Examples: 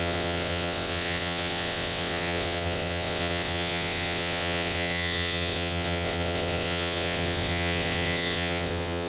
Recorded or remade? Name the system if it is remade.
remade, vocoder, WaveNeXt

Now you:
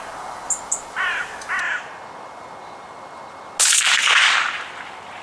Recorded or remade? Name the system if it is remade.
recorded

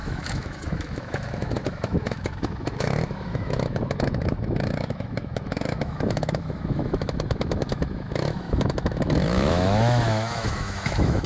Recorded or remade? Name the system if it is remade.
remade, autoencoder, DAC-VAE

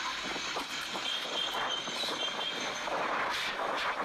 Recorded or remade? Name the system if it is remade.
remade, vocoder, BigVGAN v2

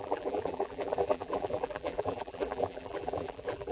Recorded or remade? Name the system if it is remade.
remade, vocoder, BigVGAN v2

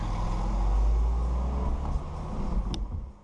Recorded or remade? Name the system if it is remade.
recorded